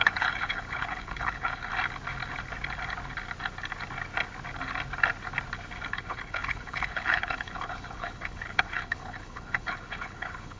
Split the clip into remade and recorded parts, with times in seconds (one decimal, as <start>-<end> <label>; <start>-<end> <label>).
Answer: 0.0-1.7 remade; 1.7-5.9 recorded; 5.9-10.6 remade